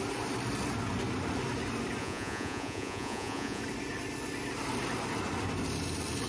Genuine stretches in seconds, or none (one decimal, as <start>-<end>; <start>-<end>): 0.0-2.0; 3.6-6.3